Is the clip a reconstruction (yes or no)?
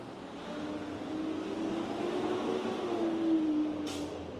no